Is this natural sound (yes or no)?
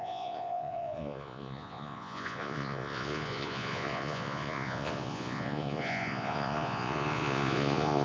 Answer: no